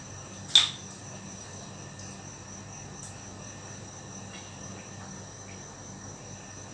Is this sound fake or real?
real